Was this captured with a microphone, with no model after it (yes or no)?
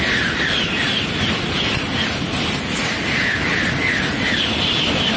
yes